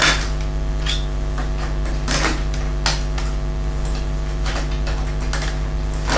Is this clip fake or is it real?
real